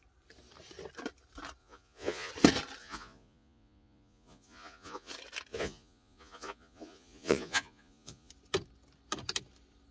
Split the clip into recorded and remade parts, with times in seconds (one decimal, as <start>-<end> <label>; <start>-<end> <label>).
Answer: 0.0-1.6 recorded; 1.6-2.3 remade; 2.3-2.8 recorded; 2.8-5.1 remade; 5.1-5.5 recorded; 5.5-8.3 remade; 8.3-9.9 recorded